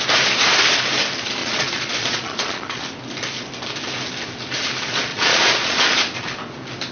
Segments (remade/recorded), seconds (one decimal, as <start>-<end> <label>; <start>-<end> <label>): 0.0-1.4 recorded; 1.4-2.8 remade; 2.8-5.1 recorded; 5.1-6.0 remade; 6.0-6.9 recorded